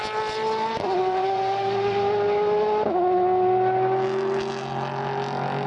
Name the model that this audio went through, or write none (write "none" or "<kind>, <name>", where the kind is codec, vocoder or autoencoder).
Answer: none